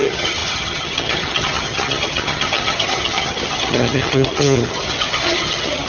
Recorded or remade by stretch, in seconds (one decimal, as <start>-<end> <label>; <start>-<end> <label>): 0.0-5.9 remade